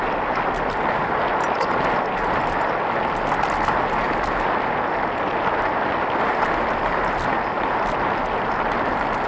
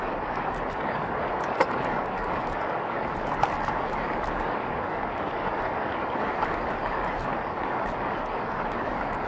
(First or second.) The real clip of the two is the first